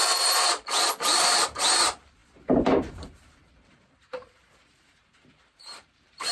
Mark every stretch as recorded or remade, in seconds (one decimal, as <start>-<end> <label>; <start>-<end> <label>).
0.0-6.3 remade